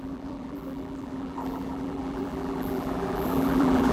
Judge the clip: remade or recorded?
remade